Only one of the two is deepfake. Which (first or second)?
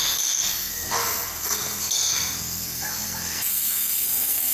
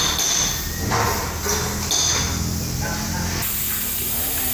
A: first